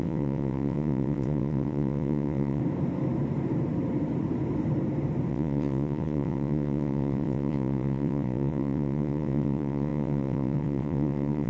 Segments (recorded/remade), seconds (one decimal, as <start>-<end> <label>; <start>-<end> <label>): 0.0-2.6 remade; 2.6-5.3 recorded; 5.3-11.5 remade